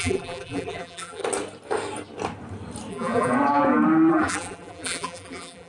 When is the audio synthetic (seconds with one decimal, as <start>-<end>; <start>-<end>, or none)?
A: 0.0-1.2; 2.9-3.3; 4.1-5.7